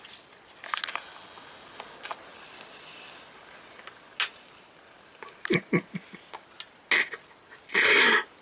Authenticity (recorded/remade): recorded